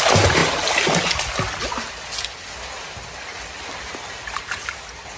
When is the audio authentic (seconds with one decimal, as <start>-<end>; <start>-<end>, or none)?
0.0-5.2